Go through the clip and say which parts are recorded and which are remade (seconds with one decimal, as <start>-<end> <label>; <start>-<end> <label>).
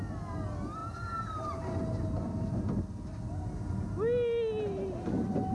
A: 0.0-5.5 recorded